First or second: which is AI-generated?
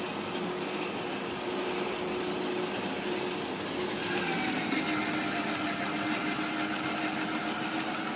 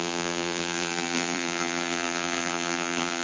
second